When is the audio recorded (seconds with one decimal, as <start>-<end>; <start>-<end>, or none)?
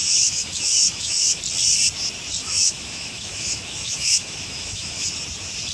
1.4-2.4; 5.0-5.7